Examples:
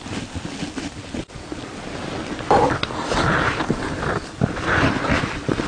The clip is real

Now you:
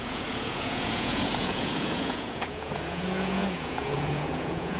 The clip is fake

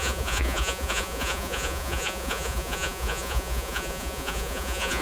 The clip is fake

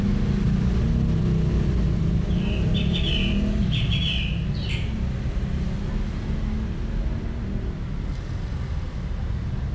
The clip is real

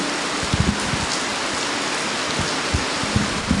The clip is real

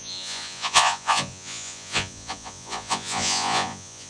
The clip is fake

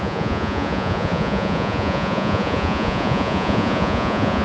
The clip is fake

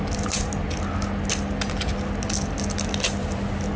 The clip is real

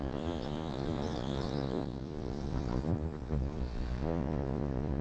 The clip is fake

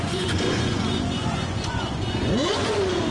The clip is fake